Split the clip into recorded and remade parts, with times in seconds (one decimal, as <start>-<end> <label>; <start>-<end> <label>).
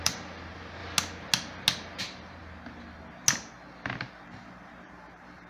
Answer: 0.0-0.8 remade; 0.8-2.0 recorded; 2.0-2.4 remade; 2.4-4.0 recorded; 4.0-5.5 remade